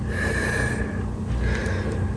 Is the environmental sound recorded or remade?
recorded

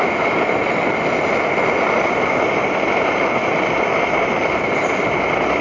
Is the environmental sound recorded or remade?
recorded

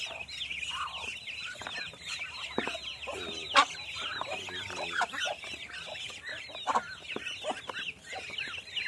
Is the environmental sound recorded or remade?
recorded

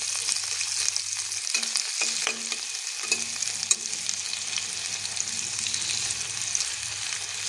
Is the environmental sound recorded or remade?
recorded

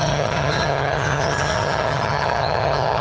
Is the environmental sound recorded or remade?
remade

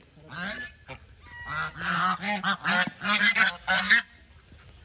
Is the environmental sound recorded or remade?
recorded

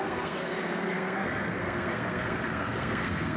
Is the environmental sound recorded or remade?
remade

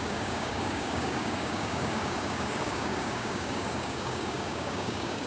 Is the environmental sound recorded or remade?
remade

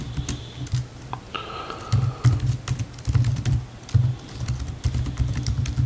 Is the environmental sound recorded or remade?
recorded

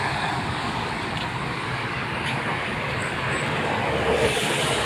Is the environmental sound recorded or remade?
remade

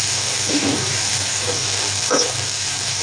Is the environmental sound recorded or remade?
remade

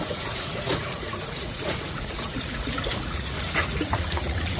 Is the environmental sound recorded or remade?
remade